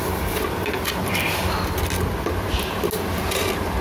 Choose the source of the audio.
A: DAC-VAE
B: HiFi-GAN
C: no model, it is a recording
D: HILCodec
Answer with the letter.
C